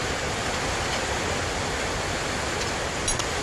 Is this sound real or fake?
real